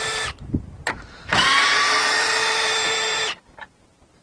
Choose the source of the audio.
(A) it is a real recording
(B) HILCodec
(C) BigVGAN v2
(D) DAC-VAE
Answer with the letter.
C